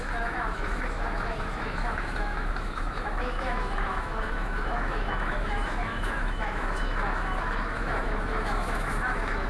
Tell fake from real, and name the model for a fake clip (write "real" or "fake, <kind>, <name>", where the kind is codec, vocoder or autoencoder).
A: fake, autoencoder, DAC-VAE